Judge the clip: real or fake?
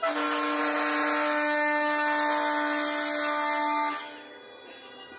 real